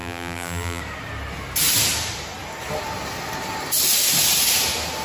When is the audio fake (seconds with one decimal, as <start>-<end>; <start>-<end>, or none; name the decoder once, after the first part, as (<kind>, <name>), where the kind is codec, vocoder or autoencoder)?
0.0-0.8 (vocoder, BigVGAN v2)